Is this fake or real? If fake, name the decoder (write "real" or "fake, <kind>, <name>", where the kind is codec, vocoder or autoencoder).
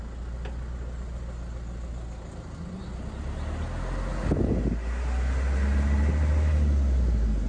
real